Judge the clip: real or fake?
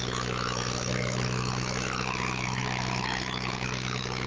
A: fake